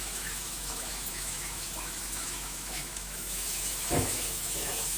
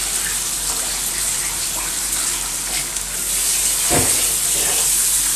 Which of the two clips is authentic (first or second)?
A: second